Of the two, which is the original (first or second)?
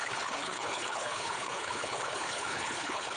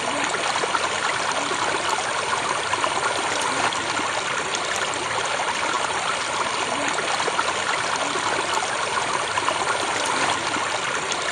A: second